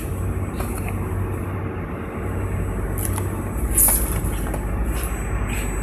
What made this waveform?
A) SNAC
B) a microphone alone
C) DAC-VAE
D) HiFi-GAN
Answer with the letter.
B